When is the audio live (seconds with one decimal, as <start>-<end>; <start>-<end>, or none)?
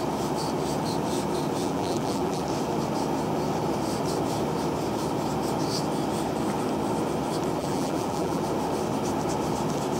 0.0-1.6; 2.4-7.6; 8.4-10.0